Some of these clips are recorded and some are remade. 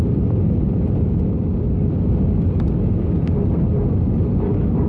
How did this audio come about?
recorded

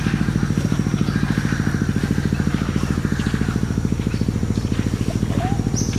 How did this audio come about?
recorded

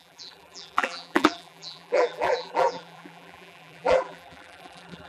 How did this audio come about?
remade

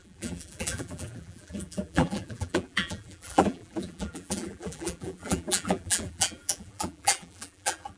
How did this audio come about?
remade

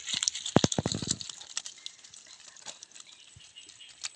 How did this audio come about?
recorded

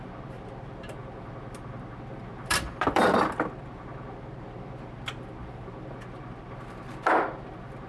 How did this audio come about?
remade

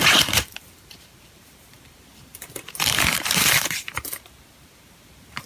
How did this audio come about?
remade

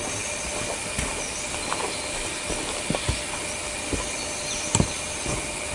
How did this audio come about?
recorded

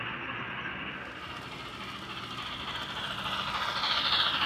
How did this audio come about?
recorded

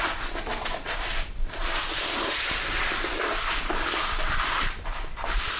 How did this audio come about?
remade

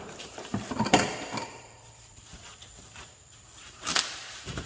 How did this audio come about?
remade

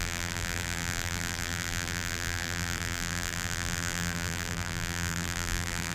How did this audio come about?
remade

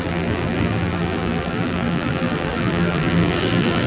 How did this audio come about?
remade